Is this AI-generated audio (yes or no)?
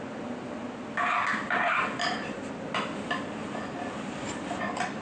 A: no